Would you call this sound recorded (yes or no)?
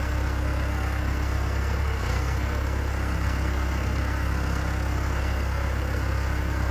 no